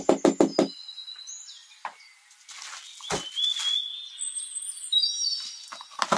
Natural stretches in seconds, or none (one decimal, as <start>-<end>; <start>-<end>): 0.0-6.2